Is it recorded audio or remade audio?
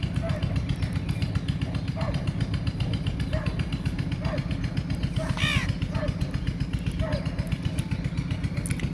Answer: recorded